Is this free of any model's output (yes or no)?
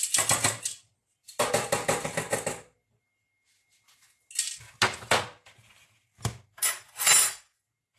yes